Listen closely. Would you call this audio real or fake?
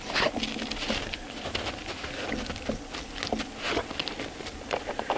real